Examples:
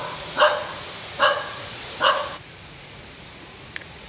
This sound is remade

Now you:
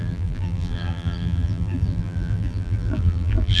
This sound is remade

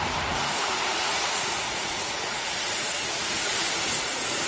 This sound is remade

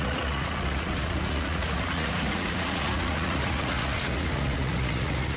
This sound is remade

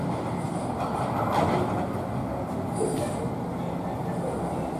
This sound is recorded